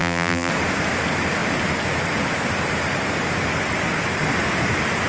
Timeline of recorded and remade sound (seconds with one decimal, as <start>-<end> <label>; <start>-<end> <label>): 0.0-0.5 remade; 0.5-5.1 recorded